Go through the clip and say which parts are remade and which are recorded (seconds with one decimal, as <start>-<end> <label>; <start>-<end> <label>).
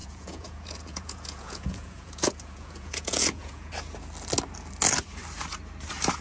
0.0-3.7 remade; 3.7-6.2 recorded